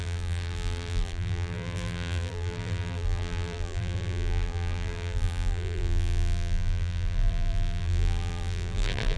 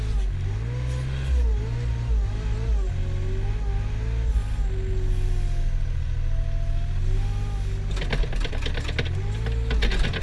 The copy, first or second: first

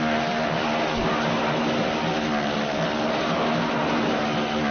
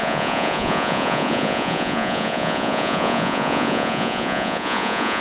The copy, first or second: second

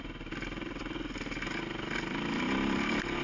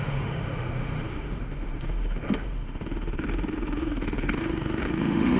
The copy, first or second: second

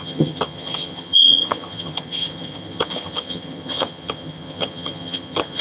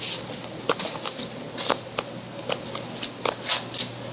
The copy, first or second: first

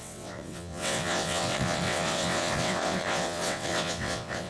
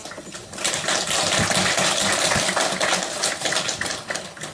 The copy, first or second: first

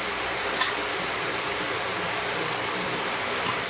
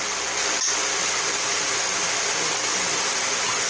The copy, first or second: first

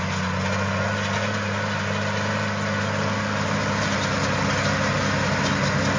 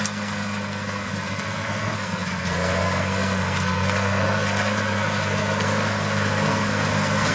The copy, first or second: second